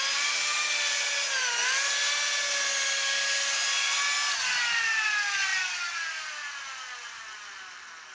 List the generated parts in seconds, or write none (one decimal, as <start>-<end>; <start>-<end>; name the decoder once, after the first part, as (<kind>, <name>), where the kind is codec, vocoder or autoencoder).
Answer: none